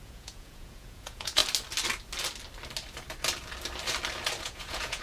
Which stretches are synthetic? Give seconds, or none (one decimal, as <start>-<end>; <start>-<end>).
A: 0.0-1.4; 4.4-5.0